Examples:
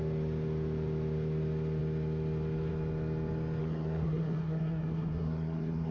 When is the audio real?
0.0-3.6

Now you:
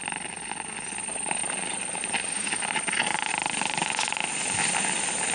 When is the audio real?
0.0-5.3

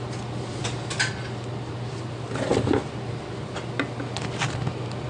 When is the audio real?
0.0-5.1

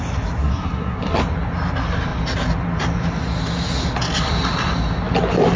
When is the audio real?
0.0-0.4; 1.2-5.6

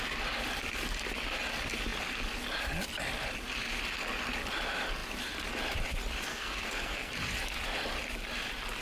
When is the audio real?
0.0-6.3; 7.1-8.8

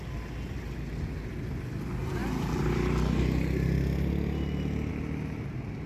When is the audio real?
0.0-5.9